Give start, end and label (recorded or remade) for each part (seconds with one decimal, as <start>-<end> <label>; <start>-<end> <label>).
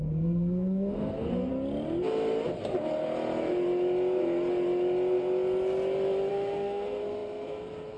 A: 0.0-1.5 remade; 1.5-6.3 recorded; 6.3-8.0 remade